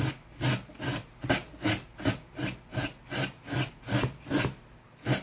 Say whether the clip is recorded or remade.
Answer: recorded